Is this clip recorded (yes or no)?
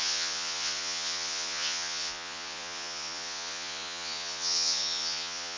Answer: no